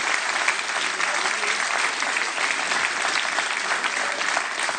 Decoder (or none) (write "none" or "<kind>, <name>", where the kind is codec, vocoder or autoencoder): none